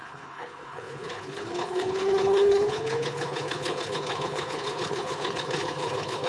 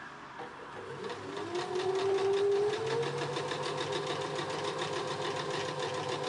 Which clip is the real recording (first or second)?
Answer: second